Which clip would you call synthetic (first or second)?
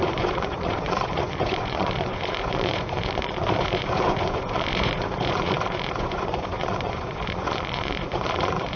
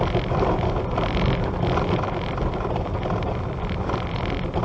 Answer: first